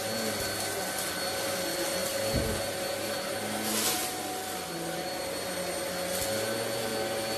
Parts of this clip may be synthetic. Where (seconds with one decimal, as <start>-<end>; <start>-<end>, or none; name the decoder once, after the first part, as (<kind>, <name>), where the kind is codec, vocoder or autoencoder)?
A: none